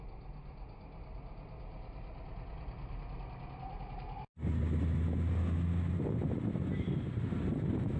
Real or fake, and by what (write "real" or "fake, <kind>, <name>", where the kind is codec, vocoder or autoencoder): real